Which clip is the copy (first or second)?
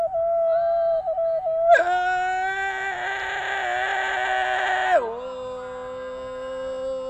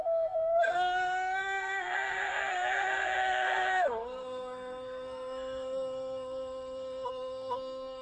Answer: second